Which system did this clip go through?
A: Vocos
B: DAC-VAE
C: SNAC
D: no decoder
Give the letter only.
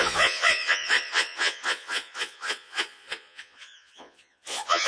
A